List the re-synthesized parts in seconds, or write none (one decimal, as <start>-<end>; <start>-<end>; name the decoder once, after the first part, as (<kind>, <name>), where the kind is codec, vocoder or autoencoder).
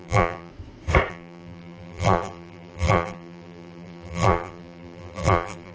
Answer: 0.0-0.5 (vocoder, BigVGAN v2); 1.1-5.7